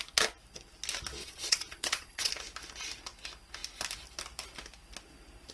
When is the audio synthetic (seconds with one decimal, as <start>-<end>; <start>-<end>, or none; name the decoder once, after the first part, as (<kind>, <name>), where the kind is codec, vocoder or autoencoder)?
1.2-2.3 (vocoder, Vocos)